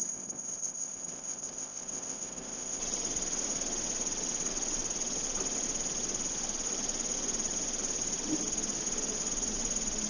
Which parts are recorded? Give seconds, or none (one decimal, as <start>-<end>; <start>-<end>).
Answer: 2.8-10.1